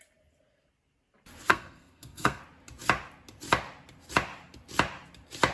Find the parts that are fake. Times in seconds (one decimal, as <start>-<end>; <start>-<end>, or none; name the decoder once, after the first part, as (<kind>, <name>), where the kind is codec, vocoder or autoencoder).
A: 1.5-2.4 (codec, SNAC)